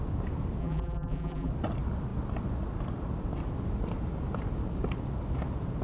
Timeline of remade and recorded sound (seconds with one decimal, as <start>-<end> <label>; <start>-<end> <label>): 0.0-0.6 recorded; 0.6-1.5 remade; 1.5-5.8 recorded